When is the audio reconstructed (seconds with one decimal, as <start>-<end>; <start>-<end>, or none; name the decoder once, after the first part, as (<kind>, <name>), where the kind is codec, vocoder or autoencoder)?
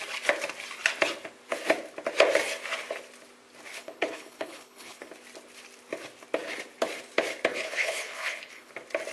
3.7-5.1 (codec, HILCodec); 7.5-8.7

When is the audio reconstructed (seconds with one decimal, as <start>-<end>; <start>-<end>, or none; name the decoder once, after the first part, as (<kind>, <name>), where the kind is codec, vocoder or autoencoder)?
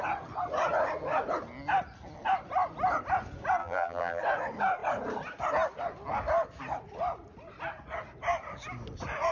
3.6-4.2 (vocoder, BigVGAN v2)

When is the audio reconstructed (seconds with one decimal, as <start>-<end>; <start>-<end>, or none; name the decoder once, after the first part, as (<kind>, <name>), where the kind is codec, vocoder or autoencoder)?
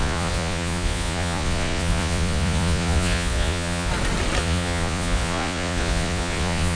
0.0-3.9 (vocoder, Vocos); 4.4-6.7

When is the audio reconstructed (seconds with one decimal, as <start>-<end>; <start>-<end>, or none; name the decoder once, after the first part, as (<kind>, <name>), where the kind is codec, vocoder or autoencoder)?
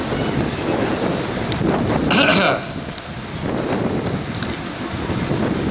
none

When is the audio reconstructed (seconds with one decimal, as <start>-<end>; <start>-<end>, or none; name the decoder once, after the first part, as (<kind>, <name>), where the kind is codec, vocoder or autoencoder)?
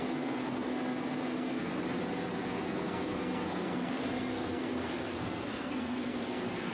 0.0-1.7 (codec, SNAC); 2.3-6.7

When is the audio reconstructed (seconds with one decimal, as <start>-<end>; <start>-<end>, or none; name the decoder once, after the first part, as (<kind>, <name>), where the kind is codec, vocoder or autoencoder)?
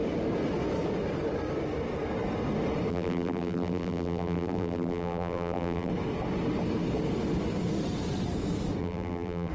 2.9-5.9 (vocoder, BigVGAN v2); 8.8-9.5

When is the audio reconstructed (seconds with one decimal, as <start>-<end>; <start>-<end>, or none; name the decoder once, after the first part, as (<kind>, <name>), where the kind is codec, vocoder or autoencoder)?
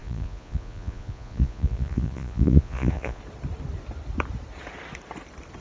0.0-3.2 (vocoder, Vocos)